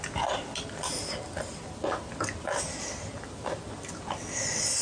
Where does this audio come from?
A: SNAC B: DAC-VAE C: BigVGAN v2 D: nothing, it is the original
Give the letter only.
D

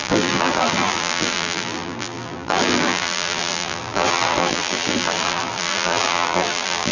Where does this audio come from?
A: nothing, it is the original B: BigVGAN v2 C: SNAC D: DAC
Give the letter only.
B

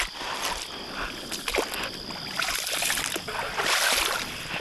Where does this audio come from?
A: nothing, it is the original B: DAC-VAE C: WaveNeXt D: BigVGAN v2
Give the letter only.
A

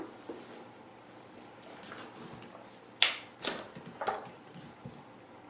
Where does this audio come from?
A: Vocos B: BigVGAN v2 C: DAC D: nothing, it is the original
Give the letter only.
D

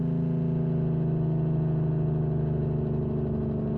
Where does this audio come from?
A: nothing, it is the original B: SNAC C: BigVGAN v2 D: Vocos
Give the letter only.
A